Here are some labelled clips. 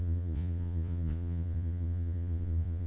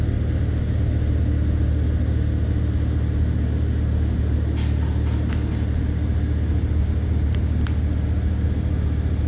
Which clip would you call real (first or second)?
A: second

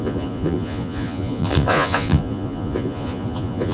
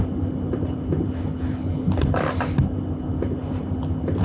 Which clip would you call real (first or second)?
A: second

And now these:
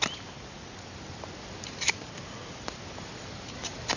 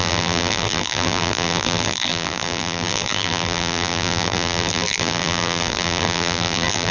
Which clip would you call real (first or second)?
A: first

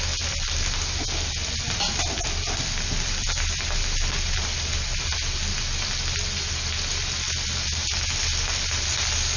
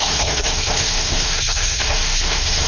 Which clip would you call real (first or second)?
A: first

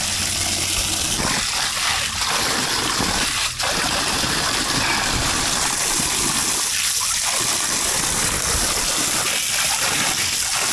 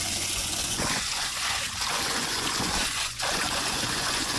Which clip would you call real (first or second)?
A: first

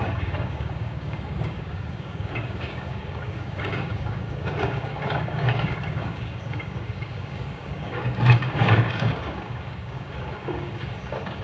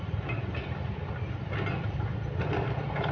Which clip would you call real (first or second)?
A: second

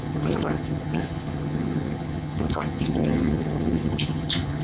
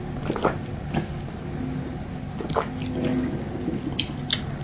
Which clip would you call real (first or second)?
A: second